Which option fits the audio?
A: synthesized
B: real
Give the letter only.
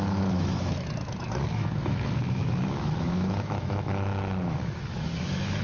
A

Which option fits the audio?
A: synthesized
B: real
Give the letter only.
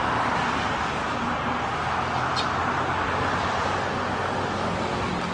B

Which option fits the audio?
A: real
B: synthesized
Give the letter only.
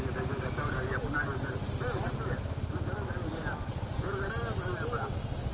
A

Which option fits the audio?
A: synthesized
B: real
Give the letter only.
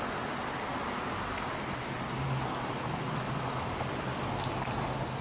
B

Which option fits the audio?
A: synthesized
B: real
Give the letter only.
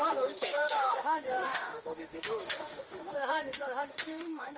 A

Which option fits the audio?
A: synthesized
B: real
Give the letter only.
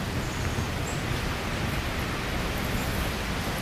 B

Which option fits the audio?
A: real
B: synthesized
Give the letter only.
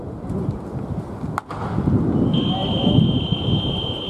A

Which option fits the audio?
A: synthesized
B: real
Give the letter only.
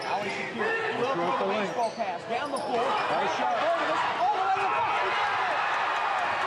B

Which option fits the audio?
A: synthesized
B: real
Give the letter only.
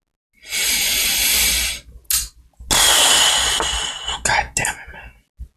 B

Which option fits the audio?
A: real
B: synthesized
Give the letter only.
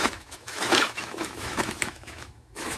B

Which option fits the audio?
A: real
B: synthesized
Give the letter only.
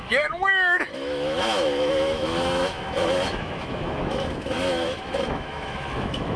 B